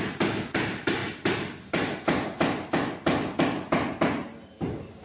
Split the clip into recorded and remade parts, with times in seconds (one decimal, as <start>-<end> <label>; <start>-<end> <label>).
0.0-5.0 recorded

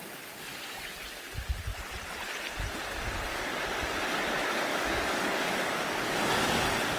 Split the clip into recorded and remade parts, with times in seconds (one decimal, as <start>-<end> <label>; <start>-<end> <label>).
0.0-3.3 recorded; 3.3-4.0 remade; 4.0-4.7 recorded; 4.7-6.6 remade; 6.6-7.0 recorded

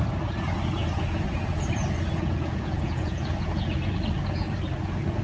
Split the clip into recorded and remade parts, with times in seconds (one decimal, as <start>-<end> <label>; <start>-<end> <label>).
0.0-0.8 recorded; 0.8-3.9 remade; 3.9-5.2 recorded